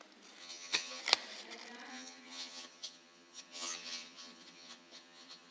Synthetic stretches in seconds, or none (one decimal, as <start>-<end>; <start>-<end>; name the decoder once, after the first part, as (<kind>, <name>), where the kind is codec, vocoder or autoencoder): 0.4-1.0 (vocoder, HiFi-GAN); 1.9-5.5

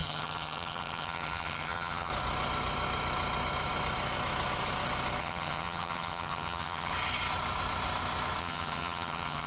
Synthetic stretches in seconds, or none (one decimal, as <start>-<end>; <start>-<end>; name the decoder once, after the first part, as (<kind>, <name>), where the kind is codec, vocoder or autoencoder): 0.0-2.1 (vocoder, HiFi-GAN); 5.2-6.9; 8.4-9.5

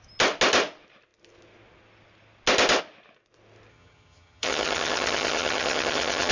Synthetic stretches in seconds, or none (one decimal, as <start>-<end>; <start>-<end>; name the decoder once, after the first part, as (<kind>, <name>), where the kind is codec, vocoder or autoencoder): 3.7-6.3 (vocoder, HiFi-GAN)

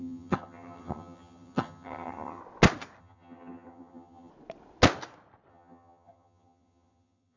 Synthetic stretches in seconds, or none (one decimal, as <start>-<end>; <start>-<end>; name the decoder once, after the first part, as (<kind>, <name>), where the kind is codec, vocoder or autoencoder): 0.0-2.4 (vocoder, HiFi-GAN); 3.0-4.3; 5.5-7.4

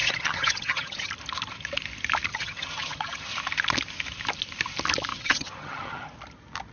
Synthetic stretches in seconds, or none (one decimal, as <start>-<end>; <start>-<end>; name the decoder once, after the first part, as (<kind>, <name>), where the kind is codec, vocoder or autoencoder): 0.0-1.1 (vocoder, HiFi-GAN); 2.3-3.3; 5.1-6.1

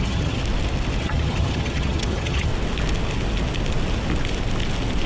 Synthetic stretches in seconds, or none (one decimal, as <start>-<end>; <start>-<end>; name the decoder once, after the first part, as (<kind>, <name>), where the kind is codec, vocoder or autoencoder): 0.0-0.4 (vocoder, HiFi-GAN); 1.0-2.5